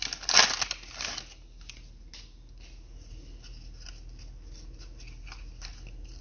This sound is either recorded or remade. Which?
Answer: recorded